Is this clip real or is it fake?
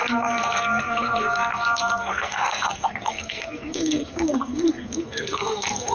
fake